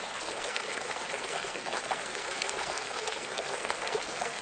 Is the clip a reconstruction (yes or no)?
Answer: yes